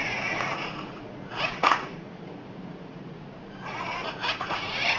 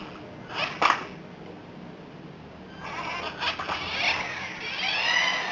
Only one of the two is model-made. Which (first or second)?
first